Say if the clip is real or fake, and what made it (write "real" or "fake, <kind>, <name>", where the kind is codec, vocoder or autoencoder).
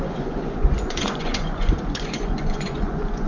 fake, vocoder, Vocos